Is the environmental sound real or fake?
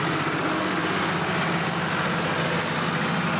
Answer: real